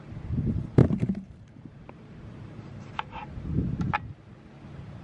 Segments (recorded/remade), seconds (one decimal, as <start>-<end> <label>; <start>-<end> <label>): 0.0-3.2 remade; 3.2-5.0 recorded